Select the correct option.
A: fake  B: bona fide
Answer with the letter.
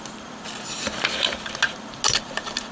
B